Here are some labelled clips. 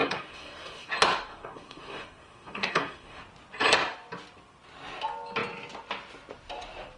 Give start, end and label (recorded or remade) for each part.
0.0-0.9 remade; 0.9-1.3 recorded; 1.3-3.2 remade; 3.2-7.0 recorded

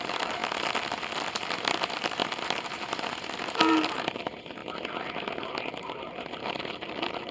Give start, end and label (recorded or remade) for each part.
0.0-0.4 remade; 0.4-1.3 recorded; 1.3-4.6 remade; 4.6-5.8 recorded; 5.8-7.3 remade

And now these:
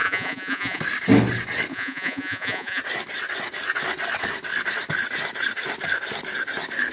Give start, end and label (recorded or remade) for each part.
0.0-0.8 remade; 0.8-1.7 recorded; 1.7-2.8 remade; 2.8-6.9 recorded